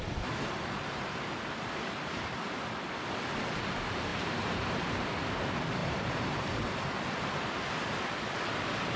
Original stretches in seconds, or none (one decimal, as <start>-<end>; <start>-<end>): 0.0-4.1; 5.1-5.8; 6.5-9.0